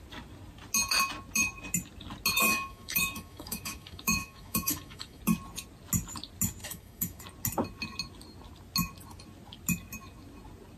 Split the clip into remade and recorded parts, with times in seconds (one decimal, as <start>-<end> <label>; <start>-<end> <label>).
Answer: 0.0-2.5 recorded; 2.5-5.2 remade; 5.2-6.6 recorded; 6.6-7.2 remade; 7.2-10.8 recorded